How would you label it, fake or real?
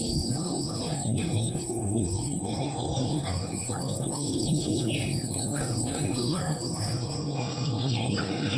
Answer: fake